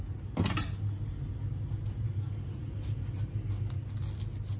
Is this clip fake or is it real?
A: real